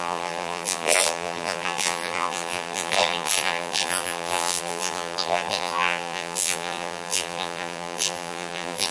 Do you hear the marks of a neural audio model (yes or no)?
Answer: yes